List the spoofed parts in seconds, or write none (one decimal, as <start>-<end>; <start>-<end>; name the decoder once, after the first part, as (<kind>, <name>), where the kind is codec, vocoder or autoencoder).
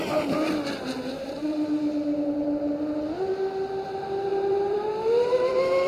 4.3-5.5 (vocoder, BigVGAN v2)